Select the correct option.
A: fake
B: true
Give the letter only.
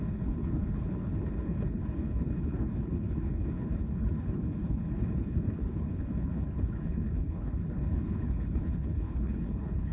A